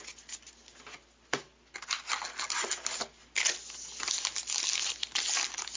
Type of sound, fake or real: real